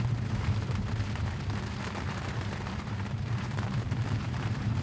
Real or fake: fake